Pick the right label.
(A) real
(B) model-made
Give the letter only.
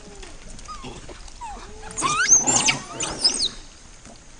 A